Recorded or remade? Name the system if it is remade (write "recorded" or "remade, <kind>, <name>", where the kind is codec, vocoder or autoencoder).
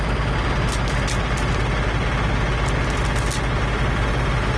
recorded